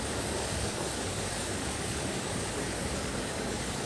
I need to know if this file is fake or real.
fake